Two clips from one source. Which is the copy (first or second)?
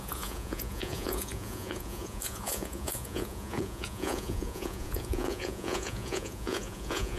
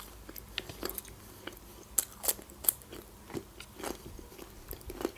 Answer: first